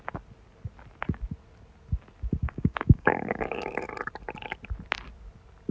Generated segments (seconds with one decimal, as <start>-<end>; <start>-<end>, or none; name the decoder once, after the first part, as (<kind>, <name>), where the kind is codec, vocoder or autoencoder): 2.4-3.6 (codec, DAC)